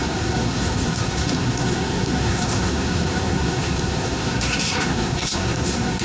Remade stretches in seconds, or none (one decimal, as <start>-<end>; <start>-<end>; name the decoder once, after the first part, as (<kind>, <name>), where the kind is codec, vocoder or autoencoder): 0.0-6.0 (codec, SNAC)